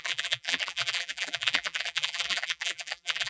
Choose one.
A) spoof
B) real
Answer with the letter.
A